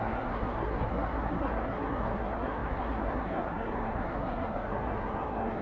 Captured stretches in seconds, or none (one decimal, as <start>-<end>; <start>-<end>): none